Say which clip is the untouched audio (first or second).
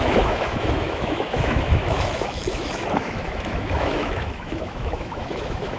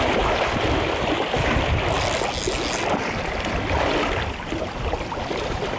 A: second